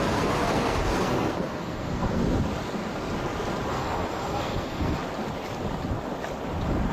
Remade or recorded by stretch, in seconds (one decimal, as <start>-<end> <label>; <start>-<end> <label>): 0.0-2.2 remade; 2.2-3.7 recorded; 3.7-5.0 remade; 5.0-6.9 recorded

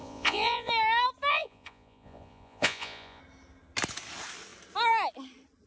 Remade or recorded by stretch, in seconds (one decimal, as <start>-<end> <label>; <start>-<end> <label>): 0.0-0.7 remade; 0.7-1.3 recorded; 1.3-3.2 remade; 3.2-5.7 recorded